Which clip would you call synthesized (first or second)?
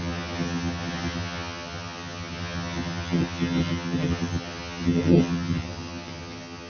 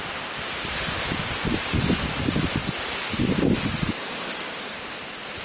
first